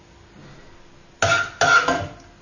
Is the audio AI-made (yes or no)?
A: no